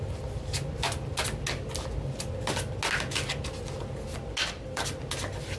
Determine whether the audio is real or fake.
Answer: real